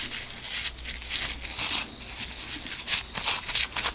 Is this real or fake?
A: real